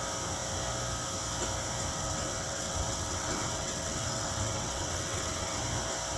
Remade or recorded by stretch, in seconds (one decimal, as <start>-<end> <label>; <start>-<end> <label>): 0.0-1.9 recorded; 1.9-5.6 remade; 5.6-6.2 recorded